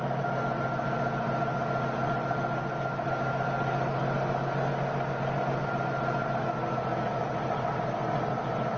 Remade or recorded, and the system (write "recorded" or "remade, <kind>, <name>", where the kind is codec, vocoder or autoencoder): recorded